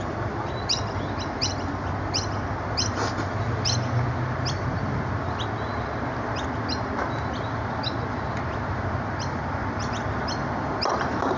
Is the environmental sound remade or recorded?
recorded